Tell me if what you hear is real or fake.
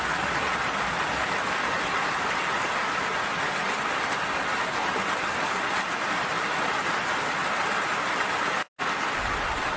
real